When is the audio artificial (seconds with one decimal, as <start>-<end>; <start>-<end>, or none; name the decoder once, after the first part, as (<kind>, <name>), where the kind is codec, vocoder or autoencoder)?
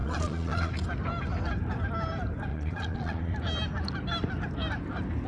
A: 0.0-0.7 (vocoder, Vocos); 2.5-3.3